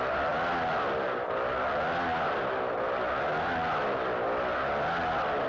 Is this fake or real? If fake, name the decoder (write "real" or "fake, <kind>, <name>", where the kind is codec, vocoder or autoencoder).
real